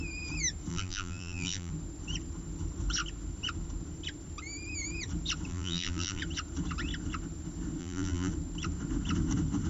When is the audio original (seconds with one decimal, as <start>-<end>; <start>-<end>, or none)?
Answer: 0.0-0.7; 1.7-5.5; 6.2-7.8; 8.3-9.7